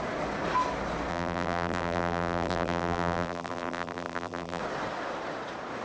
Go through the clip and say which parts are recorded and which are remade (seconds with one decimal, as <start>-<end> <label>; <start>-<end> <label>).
0.0-1.1 recorded; 1.1-4.6 remade; 4.6-5.8 recorded